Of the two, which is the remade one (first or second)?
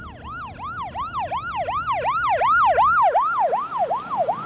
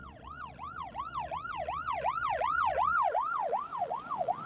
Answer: second